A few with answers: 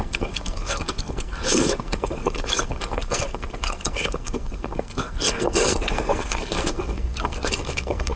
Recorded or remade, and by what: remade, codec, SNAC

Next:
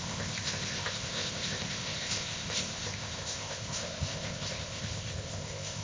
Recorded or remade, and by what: remade, codec, ZipCodec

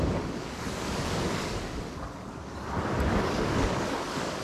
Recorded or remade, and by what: remade, codec, DAC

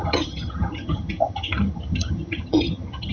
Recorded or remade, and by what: remade, vocoder, HiFi-GAN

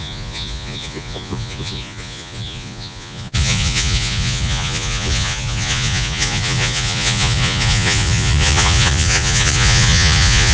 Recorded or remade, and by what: remade, vocoder, Vocos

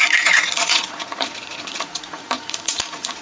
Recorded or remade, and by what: remade, vocoder, Vocos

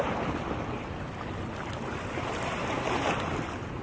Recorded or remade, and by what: recorded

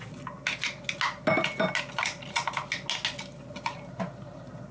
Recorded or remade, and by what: recorded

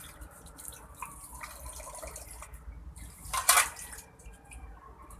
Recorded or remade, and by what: recorded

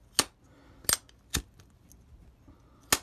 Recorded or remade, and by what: recorded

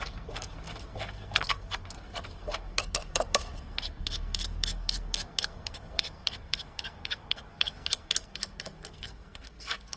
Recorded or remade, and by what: remade, codec, SNAC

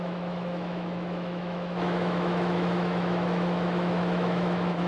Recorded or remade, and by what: remade, autoencoder, DAC-VAE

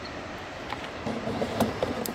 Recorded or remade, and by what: recorded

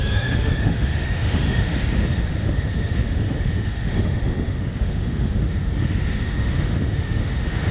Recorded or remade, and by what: remade, autoencoder, DAC-VAE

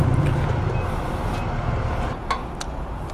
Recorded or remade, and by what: recorded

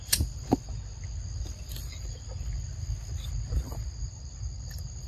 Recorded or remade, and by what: recorded